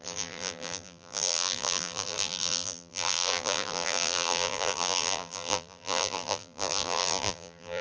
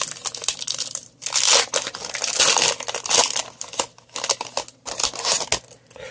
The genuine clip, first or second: second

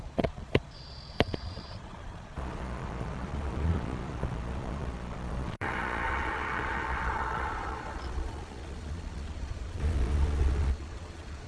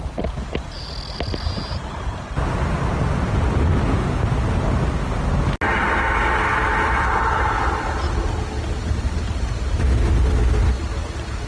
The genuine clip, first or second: second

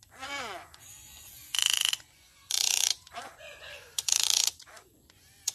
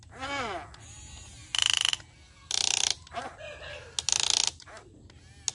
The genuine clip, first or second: second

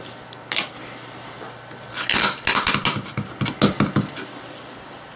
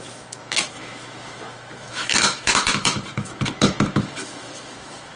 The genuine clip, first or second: first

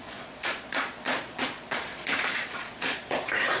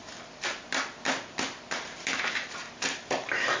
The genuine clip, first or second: second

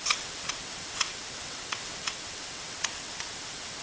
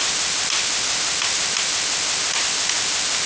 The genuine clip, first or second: second